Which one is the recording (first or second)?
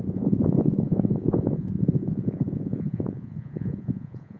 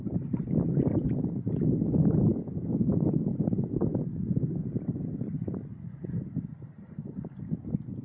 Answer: second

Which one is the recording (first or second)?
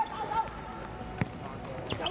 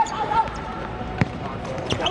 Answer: first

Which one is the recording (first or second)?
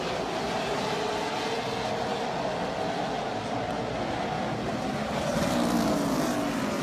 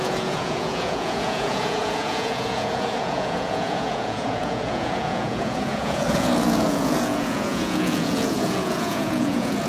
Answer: first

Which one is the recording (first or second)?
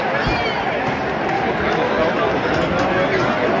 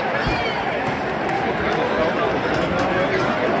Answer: first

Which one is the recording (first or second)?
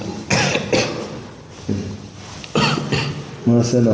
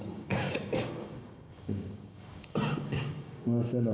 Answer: first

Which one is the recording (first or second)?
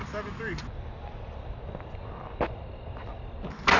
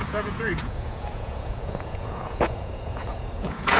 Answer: first